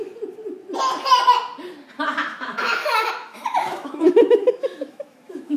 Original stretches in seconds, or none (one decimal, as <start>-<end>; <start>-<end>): 0.0-2.2